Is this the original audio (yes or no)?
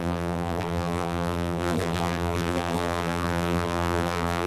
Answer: no